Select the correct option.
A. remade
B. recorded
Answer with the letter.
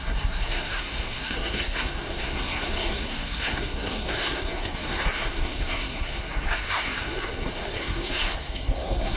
A